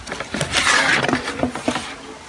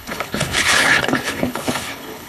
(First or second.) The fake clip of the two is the second